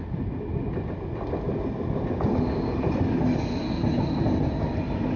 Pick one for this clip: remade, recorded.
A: recorded